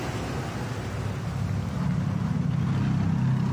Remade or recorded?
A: recorded